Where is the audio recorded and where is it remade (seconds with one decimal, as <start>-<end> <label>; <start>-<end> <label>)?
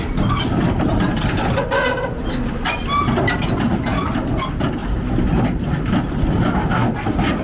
0.0-7.4 recorded